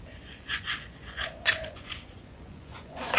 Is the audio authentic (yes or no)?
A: no